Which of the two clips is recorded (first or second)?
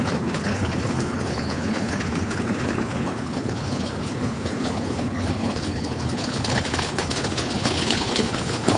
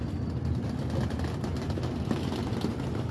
second